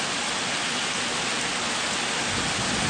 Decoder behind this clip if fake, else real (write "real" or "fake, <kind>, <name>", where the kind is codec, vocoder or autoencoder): real